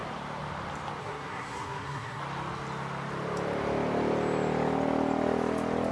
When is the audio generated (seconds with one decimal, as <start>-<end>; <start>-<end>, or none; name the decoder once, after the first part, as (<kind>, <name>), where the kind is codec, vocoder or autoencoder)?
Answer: 1.0-2.2 (codec, SNAC)